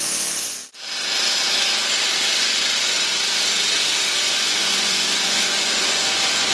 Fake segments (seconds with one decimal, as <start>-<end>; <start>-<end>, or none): 0.0-0.6; 2.4-3.1; 4.2-6.5